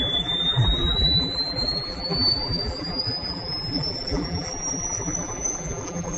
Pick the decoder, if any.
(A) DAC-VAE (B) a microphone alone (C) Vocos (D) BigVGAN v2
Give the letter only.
D